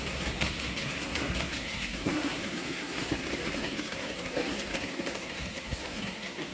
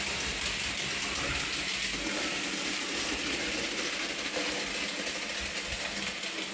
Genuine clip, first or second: second